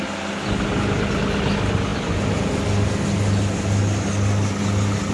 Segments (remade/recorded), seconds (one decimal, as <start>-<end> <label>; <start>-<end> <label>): 0.0-5.1 recorded